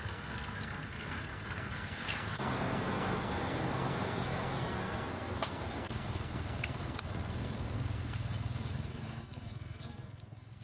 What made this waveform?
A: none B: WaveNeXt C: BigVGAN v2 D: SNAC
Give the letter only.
D